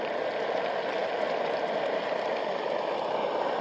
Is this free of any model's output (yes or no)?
yes